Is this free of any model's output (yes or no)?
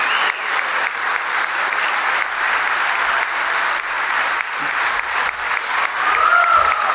yes